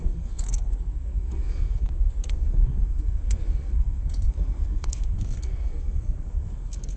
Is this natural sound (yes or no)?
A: no